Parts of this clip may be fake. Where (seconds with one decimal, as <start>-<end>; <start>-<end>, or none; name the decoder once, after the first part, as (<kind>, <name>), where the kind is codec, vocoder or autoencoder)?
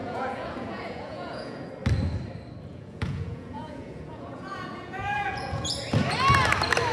0.0-1.7 (vocoder, Vocos); 2.7-5.7